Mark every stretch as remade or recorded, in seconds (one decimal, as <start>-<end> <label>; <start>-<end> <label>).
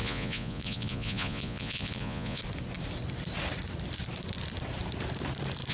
0.0-2.4 remade; 2.4-5.7 recorded